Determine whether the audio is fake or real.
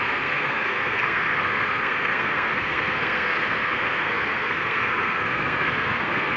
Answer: fake